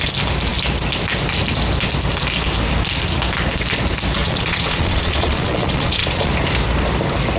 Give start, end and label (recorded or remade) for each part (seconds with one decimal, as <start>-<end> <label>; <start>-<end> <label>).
0.0-4.2 recorded; 4.2-6.3 remade; 6.3-7.4 recorded